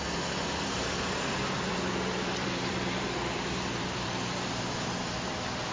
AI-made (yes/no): yes